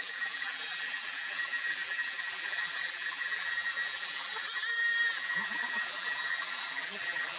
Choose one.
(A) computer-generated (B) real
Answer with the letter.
A